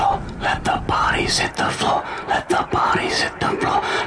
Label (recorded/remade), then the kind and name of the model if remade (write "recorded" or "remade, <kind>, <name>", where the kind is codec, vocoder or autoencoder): recorded